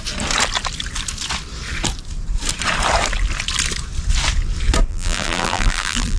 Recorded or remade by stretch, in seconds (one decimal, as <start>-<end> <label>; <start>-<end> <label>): 0.0-4.9 recorded; 4.9-6.2 remade